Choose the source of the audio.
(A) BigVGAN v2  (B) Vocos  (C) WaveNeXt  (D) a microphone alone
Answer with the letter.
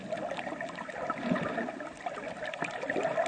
D